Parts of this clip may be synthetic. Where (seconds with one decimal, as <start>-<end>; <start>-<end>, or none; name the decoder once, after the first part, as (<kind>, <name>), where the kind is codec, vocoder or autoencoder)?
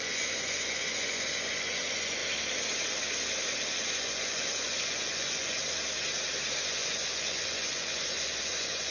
0.0-2.2 (vocoder, Vocos); 3.8-5.6; 6.6-8.9